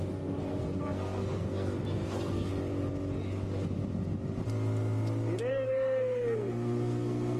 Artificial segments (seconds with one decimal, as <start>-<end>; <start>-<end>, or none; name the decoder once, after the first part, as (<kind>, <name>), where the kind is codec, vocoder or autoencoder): 0.0-2.5 (codec, SNAC); 5.5-7.4